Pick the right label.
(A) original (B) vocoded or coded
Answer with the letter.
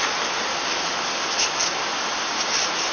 A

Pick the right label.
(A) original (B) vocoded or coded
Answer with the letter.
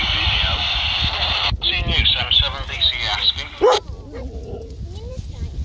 A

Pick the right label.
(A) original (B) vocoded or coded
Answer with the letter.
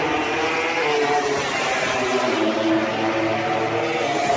A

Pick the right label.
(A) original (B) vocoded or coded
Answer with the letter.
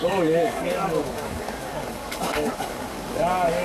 B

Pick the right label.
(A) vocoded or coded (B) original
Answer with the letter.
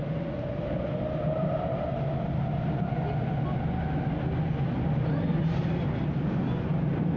B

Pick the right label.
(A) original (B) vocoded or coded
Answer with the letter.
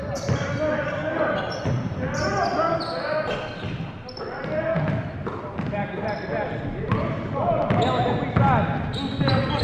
A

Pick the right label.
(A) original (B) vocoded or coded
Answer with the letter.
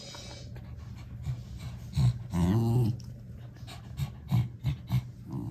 A